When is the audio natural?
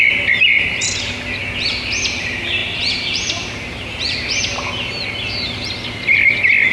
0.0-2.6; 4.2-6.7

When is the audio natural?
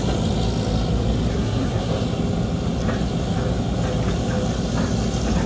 0.0-1.3; 1.9-5.5